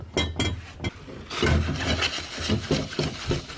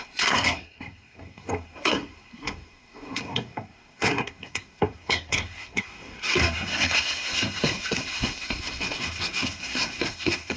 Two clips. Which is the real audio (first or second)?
first